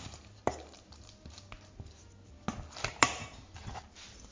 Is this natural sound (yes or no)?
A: yes